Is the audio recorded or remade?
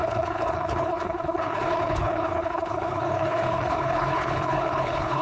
remade